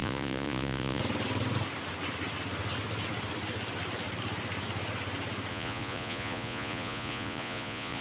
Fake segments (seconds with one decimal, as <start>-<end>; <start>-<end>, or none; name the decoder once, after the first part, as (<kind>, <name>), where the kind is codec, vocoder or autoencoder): 0.0-1.0 (vocoder, Vocos); 5.5-8.0